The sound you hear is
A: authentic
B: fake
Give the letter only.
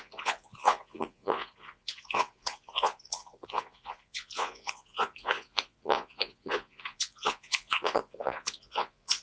B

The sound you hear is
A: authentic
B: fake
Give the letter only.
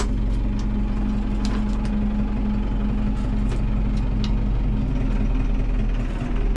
A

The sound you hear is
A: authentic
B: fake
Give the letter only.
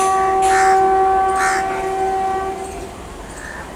A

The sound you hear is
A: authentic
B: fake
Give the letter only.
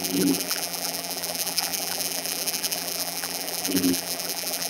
B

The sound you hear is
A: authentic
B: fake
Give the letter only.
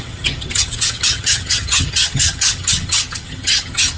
B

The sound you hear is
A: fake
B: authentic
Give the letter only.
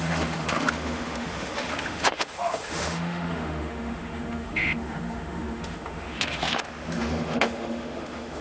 A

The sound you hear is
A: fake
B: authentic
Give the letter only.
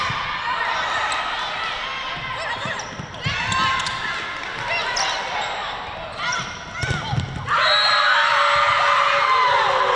B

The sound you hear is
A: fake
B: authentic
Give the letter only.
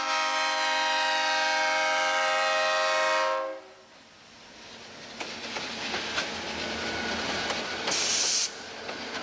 B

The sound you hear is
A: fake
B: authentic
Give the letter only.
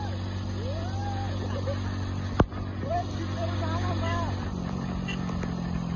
B